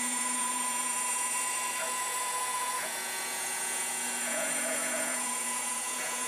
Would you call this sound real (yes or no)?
no